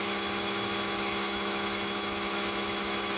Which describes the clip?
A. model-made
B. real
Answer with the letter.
A